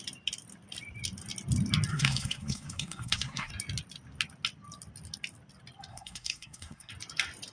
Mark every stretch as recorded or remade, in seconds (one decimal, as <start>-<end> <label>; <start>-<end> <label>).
0.0-1.9 recorded; 1.9-3.5 remade; 3.5-5.9 recorded; 5.9-6.9 remade; 6.9-7.5 recorded